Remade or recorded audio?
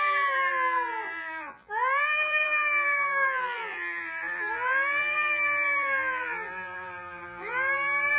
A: remade